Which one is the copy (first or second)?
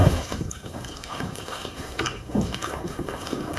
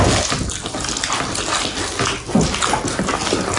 first